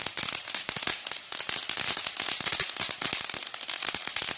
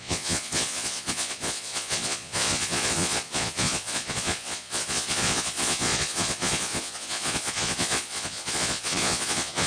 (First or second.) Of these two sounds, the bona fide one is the first